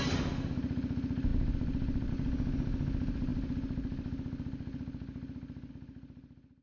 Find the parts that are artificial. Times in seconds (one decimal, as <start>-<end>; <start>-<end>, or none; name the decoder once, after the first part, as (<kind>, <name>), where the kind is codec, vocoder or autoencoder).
none